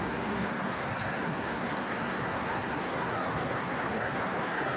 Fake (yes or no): yes